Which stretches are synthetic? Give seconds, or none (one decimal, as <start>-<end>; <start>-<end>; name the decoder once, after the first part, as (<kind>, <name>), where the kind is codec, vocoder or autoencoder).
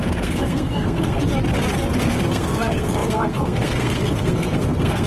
0.0-1.2 (codec, SNAC); 2.0-5.1